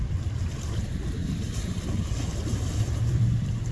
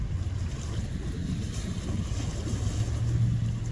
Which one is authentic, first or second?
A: second